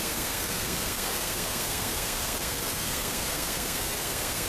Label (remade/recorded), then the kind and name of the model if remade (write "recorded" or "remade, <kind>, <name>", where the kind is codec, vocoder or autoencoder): remade, codec, SNAC